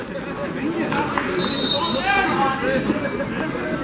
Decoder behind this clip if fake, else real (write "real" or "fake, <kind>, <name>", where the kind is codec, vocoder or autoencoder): real